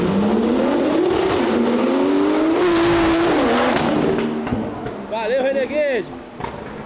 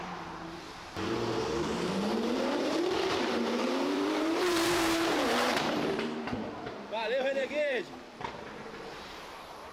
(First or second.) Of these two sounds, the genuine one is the first